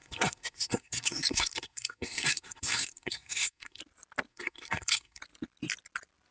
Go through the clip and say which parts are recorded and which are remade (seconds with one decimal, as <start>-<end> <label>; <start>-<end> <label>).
0.0-3.8 remade; 3.8-4.3 recorded; 4.3-5.2 remade; 5.2-6.3 recorded